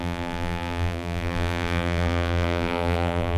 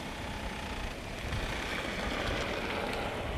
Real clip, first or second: second